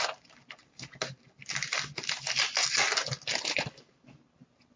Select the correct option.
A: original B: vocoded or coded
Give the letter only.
A